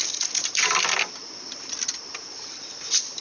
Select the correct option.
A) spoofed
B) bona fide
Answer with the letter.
A